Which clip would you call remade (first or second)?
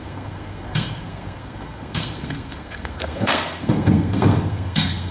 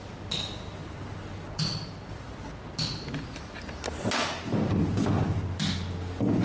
first